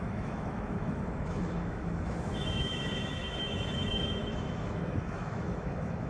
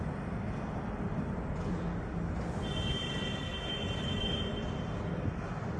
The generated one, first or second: first